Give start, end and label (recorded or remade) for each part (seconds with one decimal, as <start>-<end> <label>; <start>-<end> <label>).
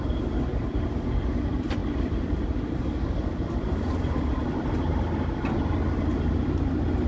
0.0-7.1 recorded